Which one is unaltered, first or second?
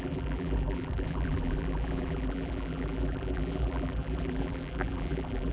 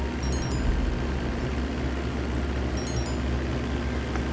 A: second